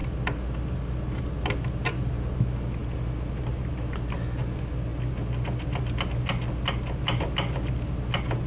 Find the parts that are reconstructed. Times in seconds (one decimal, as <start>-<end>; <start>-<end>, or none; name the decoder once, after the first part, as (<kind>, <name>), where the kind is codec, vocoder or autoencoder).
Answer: none